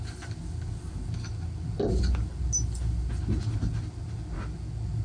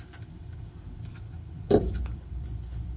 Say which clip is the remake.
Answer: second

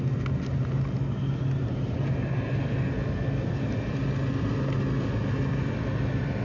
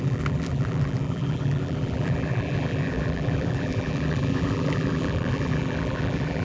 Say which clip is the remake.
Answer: second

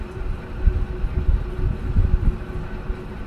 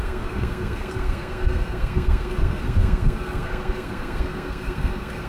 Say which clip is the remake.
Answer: second